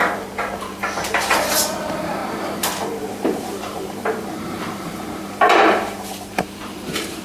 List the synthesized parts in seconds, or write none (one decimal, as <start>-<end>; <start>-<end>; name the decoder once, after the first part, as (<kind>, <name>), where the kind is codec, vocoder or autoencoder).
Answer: 0.0-7.2 (vocoder, BigVGAN v2)